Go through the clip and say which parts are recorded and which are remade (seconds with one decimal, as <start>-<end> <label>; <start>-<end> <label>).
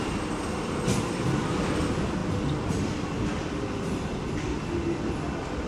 0.0-5.7 recorded